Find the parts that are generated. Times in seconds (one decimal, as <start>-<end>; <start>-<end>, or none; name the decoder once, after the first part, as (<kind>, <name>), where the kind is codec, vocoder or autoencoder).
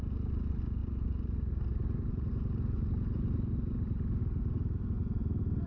none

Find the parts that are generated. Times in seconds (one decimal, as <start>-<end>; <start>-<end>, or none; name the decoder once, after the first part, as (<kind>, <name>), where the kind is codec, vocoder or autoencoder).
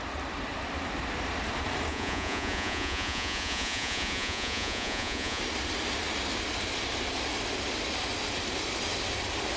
1.9-5.4 (vocoder, Vocos)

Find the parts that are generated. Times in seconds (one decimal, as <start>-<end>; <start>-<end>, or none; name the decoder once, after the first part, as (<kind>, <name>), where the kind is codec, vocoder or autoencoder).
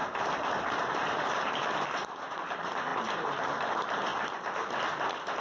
0.0-4.1 (vocoder, BigVGAN v2)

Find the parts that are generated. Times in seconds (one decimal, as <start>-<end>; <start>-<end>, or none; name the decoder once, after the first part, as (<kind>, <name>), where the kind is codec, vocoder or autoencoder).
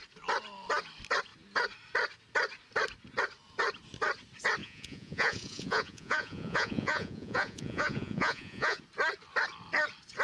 4.6-8.8 (vocoder, Vocos)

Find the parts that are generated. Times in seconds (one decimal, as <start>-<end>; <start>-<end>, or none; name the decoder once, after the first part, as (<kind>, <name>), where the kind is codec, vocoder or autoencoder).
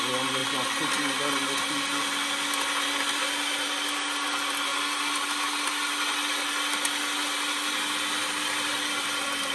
none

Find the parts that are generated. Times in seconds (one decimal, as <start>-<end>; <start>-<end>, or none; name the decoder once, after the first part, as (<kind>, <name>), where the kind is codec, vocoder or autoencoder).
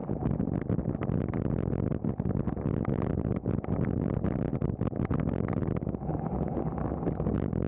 none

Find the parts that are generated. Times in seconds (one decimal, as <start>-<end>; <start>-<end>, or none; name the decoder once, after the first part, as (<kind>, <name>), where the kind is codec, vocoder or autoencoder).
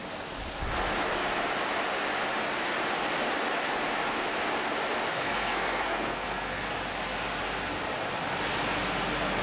5.1-6.7 (codec, SNAC)